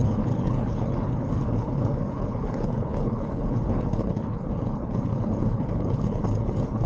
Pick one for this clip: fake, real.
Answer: fake